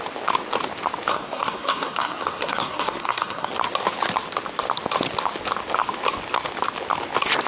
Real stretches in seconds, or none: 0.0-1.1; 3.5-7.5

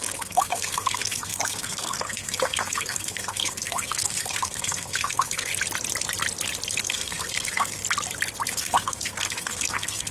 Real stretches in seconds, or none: 5.5-6.8; 7.8-8.5

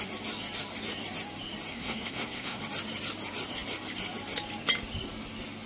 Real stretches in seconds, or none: 0.0-1.7; 2.6-5.7

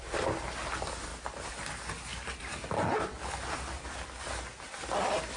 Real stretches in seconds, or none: 0.0-5.4

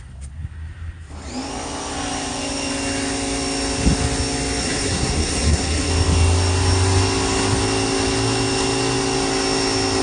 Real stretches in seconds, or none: 0.0-4.6; 5.9-10.0

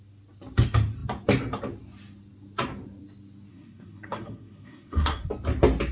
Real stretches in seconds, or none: 0.0-3.5; 5.3-5.9

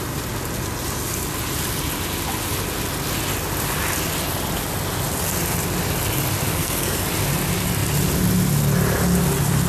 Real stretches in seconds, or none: 0.0-6.5; 7.0-9.7

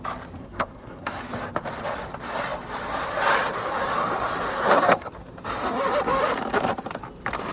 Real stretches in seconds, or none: 0.0-0.4; 1.2-4.5; 5.1-7.5